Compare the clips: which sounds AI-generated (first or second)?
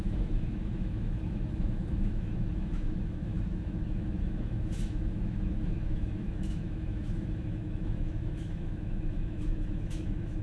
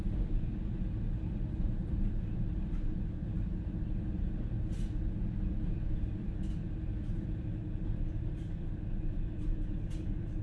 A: first